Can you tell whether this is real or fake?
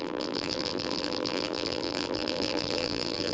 fake